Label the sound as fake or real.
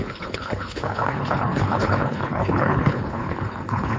fake